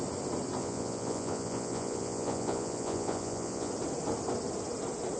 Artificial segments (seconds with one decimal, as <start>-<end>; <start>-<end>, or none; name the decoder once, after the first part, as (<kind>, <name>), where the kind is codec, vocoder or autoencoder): 0.6-3.7 (vocoder, Vocos)

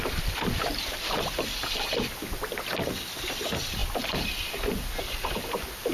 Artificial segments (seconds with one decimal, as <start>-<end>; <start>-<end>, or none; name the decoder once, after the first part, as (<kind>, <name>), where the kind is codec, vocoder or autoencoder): none

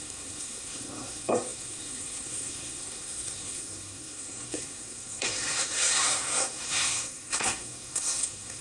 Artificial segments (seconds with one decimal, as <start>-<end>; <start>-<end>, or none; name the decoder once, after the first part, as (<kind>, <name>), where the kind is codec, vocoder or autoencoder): 0.0-8.6 (codec, SNAC)

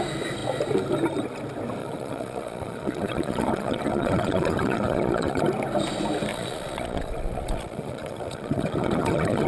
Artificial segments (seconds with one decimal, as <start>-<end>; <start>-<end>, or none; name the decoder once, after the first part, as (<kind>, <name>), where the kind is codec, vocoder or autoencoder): 1.8-5.4 (vocoder, Vocos); 6.3-9.5

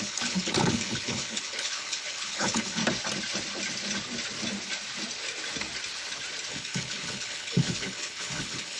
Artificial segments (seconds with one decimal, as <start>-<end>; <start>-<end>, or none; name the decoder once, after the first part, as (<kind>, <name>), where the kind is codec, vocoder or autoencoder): 0.0-2.8 (codec, HILCodec); 6.5-8.8

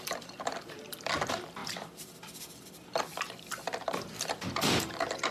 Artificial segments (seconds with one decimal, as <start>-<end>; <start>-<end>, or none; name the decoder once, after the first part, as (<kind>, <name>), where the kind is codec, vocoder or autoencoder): 0.0-5.3 (vocoder, BigVGAN v2)

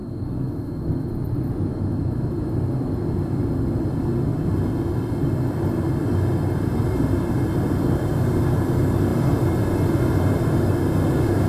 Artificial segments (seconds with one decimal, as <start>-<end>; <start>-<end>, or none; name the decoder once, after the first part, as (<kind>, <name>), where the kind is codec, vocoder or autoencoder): 0.0-1.1 (autoencoder, DAC-VAE); 1.7-2.4

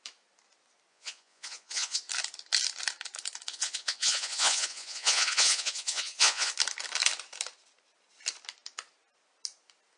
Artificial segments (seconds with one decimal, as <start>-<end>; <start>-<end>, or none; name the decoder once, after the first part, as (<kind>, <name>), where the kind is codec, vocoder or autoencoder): 0.9-2.0 (vocoder, Vocos); 3.5-6.5